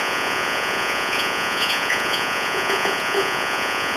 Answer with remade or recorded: remade